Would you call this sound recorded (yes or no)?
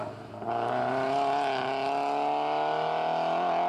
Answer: yes